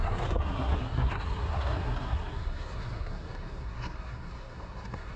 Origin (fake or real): fake